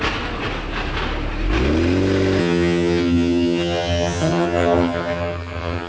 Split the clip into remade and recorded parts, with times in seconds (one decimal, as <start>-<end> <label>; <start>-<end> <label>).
0.0-2.4 recorded; 2.4-5.9 remade